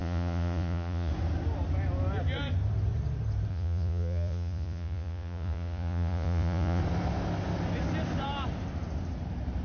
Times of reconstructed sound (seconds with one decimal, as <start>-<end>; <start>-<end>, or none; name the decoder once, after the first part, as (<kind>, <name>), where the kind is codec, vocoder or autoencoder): 0.0-1.1 (vocoder, Vocos); 3.5-6.8